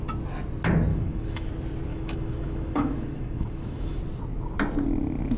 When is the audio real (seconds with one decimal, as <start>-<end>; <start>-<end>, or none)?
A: 0.0-0.9; 1.5-1.9; 4.0-5.4